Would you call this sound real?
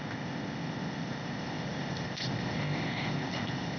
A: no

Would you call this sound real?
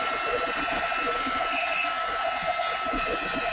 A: yes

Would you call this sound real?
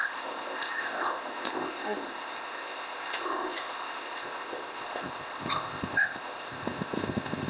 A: no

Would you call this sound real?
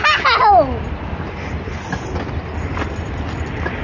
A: yes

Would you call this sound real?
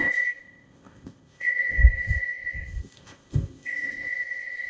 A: no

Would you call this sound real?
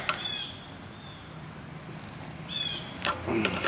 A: yes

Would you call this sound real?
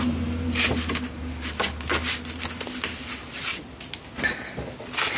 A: yes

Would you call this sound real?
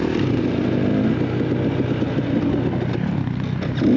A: yes